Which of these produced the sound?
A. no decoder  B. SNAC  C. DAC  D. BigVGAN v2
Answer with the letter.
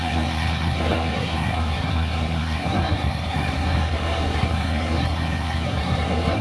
B